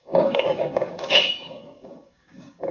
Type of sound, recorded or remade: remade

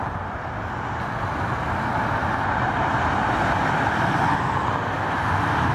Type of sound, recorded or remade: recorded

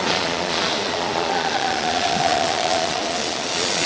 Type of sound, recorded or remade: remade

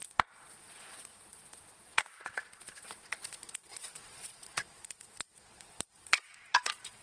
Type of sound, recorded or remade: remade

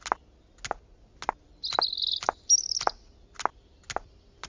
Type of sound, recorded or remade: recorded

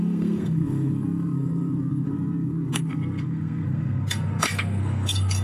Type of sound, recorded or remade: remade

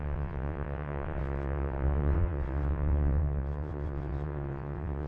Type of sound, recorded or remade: remade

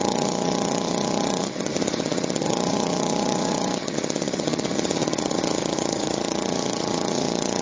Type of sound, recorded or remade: remade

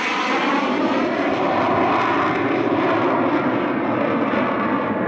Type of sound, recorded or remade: recorded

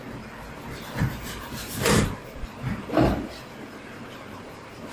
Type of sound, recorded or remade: remade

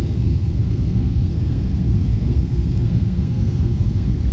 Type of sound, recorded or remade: remade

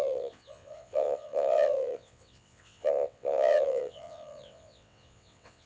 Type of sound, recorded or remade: remade